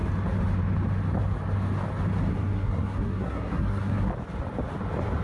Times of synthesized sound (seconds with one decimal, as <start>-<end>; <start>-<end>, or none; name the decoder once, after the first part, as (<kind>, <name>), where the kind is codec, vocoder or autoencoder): 2.3-4.1 (codec, SNAC)